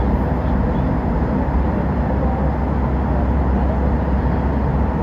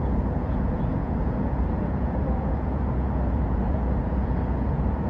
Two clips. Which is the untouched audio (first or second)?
first